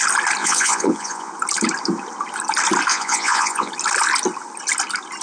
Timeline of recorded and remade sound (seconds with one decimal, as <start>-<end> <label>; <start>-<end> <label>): 0.0-0.4 recorded; 0.4-1.3 remade; 1.3-2.9 recorded; 2.9-3.7 remade; 3.7-5.2 recorded